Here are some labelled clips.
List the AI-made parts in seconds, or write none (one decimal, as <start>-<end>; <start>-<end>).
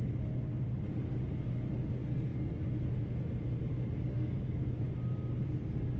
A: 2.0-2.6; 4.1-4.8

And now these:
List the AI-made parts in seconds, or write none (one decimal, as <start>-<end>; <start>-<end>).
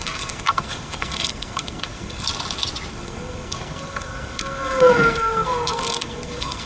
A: 0.0-2.3; 2.9-6.7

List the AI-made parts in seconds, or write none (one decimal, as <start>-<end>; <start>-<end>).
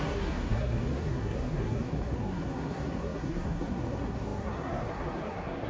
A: 0.0-5.7